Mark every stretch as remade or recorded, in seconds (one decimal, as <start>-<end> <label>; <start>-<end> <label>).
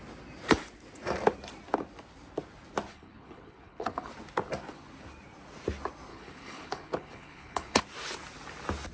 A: 0.0-2.9 recorded; 2.9-4.1 remade; 4.1-6.1 recorded; 6.1-7.8 remade; 7.8-8.9 recorded